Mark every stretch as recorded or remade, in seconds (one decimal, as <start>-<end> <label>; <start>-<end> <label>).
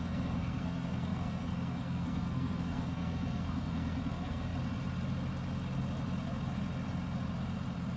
0.0-4.5 remade; 4.5-8.0 recorded